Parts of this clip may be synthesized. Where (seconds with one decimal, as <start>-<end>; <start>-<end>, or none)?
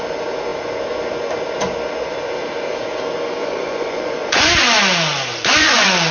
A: 3.4-4.5; 5.5-6.1